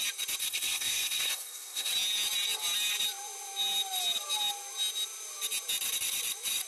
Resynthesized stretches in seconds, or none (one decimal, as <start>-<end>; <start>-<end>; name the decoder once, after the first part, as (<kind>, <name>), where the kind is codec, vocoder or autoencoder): 0.4-1.9 (codec, SNAC)